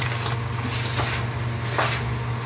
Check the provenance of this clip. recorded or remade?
recorded